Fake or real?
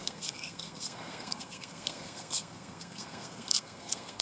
fake